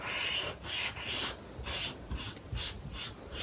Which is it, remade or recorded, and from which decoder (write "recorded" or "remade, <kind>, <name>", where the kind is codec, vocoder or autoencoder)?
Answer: remade, vocoder, BigVGAN v2